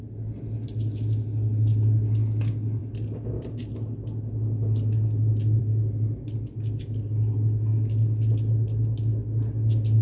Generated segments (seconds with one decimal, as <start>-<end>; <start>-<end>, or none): none